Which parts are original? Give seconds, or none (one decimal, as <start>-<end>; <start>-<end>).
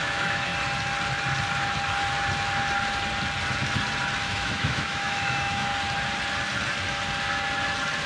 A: 0.5-4.2; 5.7-8.1